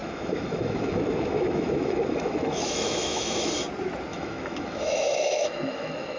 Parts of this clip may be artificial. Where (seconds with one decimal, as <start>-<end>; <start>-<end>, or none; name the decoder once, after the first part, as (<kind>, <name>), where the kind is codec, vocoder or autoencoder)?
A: 0.0-3.5 (autoencoder, DAC-VAE); 4.1-6.2